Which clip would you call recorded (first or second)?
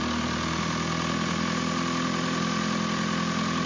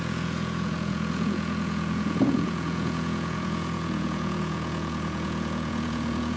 first